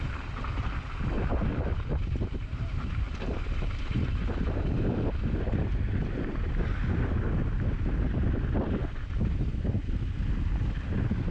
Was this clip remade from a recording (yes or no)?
no